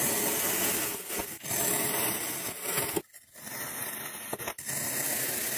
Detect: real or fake real